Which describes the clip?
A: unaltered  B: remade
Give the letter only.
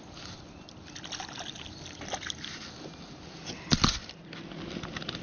A